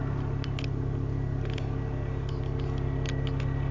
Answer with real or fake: real